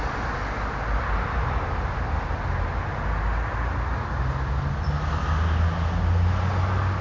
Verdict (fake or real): real